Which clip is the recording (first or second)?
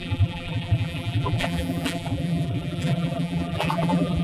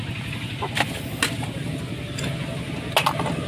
second